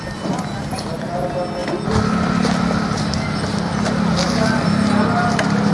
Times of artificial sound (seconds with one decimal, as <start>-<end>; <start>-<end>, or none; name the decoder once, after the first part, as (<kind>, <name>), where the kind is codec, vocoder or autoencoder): none